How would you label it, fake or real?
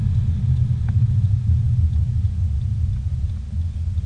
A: real